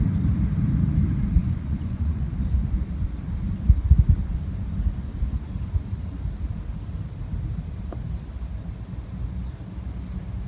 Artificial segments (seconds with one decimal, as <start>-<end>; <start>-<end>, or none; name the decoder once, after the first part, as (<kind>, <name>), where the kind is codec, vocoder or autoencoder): 1.4-2.3 (vocoder, Vocos)